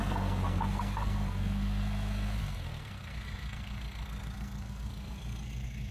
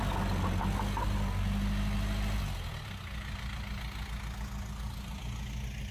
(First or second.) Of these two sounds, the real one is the second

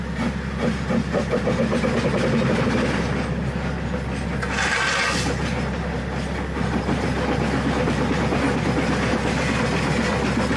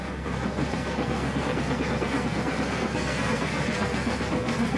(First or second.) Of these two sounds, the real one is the first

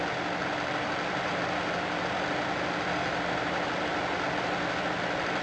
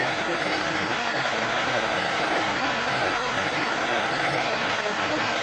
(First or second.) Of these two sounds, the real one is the first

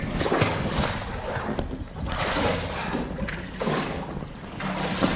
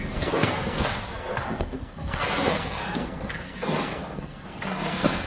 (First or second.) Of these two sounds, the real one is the first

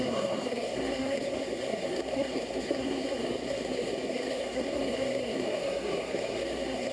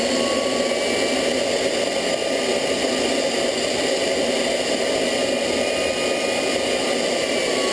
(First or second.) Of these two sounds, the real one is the second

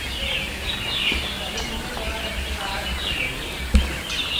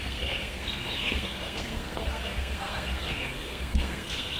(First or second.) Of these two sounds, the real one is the first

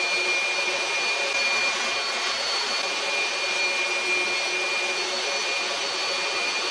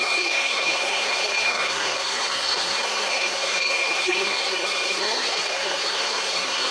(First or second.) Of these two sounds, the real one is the first